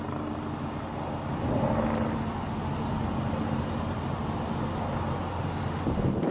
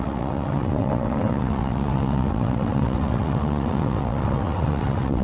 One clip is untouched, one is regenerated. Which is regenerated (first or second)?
second